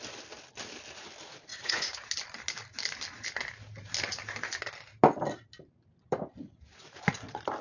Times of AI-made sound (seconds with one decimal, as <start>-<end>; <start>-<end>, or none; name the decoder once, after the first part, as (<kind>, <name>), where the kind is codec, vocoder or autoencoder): 1.5-2.1 (vocoder, Vocos)